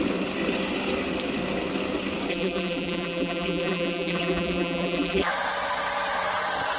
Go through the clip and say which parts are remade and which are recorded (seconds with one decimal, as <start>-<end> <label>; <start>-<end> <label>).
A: 0.0-2.3 recorded; 2.3-5.3 remade; 5.3-6.8 recorded